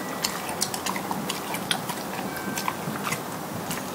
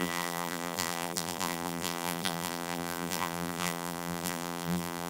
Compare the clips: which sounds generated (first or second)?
second